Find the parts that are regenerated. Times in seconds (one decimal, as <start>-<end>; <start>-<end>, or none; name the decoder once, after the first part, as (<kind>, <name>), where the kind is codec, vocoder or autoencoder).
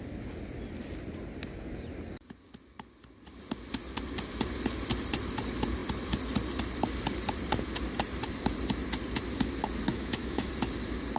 9.9-10.5 (autoencoder, DAC-VAE)